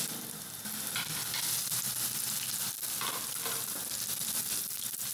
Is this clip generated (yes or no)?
no